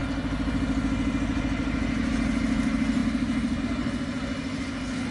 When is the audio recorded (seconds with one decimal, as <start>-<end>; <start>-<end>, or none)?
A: 0.0-5.1